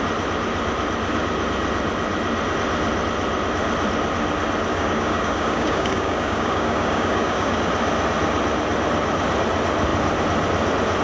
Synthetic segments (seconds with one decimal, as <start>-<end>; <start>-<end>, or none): 4.7-7.6